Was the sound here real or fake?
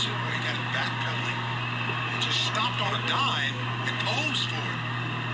real